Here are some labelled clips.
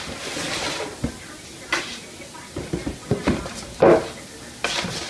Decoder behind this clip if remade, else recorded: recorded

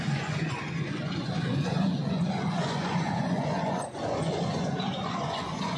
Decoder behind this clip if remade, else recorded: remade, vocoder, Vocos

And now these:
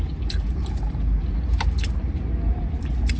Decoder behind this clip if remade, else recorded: recorded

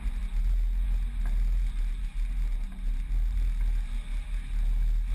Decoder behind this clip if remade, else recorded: recorded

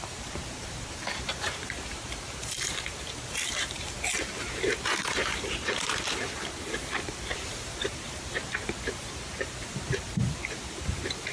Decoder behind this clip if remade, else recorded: remade, vocoder, BigVGAN v2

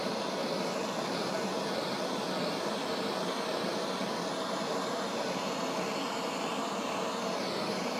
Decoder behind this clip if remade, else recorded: remade, vocoder, BigVGAN v2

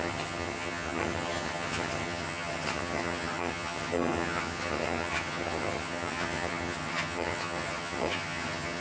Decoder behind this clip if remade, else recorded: remade, vocoder, HiFi-GAN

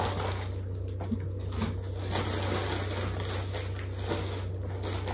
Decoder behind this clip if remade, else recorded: recorded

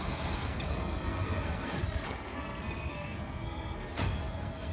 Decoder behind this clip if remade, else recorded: remade, codec, SNAC